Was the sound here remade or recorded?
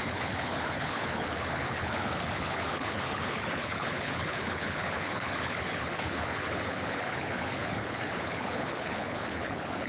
remade